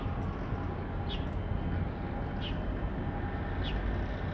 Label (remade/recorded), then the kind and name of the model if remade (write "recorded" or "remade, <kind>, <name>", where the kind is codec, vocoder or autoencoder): recorded